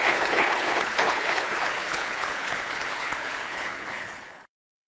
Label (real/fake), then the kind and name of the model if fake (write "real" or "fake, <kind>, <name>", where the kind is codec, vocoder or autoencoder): fake, codec, HILCodec